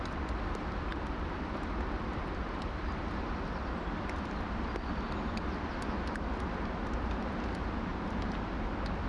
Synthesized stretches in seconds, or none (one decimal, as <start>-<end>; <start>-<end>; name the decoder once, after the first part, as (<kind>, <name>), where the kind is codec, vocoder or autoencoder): 0.9-5.7 (vocoder, BigVGAN v2)